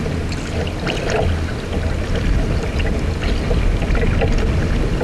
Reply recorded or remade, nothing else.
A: recorded